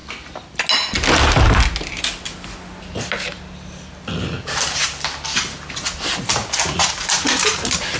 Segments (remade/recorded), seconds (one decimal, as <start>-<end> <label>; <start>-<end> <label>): 0.0-8.0 recorded